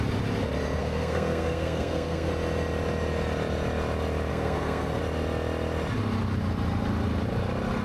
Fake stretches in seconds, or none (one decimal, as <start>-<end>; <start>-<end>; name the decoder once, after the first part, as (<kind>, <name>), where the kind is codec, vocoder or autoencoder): 0.8-2.3 (codec, SNAC); 4.3-5.0

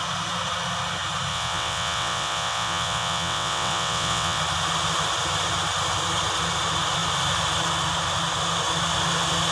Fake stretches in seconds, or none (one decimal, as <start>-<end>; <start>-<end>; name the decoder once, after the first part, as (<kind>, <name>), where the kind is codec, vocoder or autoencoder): 1.3-4.4 (vocoder, WaveNeXt)

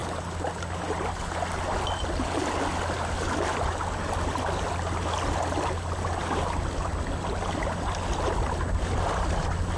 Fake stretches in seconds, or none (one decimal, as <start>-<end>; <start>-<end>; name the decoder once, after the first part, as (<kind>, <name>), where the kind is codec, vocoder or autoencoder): none

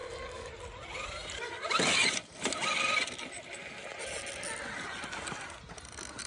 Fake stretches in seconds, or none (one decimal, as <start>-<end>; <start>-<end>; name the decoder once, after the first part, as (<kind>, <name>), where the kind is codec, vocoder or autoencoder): 0.0-0.5 (codec, DAC)

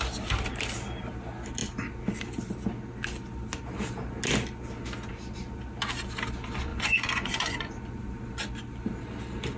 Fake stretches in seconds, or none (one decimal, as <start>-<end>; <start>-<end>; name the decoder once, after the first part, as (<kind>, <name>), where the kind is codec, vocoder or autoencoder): 6.7-8.0 (vocoder, Vocos)

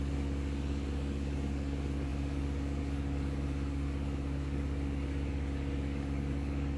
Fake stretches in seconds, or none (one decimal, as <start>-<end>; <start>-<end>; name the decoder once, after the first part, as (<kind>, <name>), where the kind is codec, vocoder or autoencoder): 0.0-6.8 (codec, DAC)